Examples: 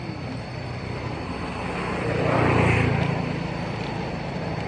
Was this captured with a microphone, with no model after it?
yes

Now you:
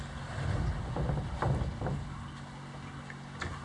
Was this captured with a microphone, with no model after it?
yes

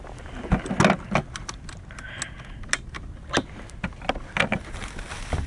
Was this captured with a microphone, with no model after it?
yes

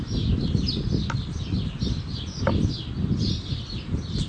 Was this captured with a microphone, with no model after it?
yes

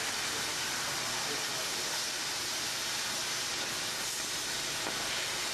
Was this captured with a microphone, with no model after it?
yes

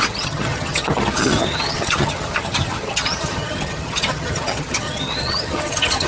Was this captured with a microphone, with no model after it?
no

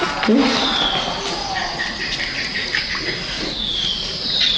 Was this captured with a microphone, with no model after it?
yes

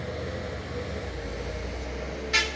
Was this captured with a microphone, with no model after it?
yes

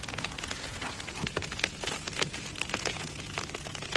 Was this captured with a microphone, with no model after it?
no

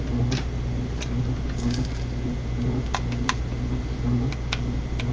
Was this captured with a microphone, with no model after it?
yes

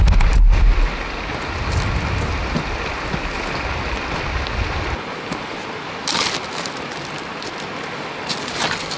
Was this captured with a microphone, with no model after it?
yes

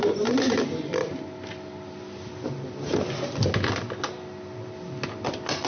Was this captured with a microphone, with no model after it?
yes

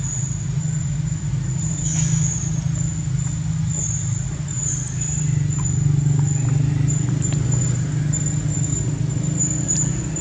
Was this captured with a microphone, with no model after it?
yes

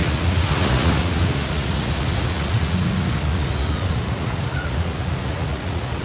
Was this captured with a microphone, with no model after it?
no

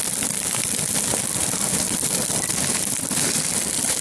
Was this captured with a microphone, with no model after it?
yes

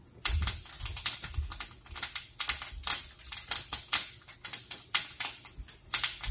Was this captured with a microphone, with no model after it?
yes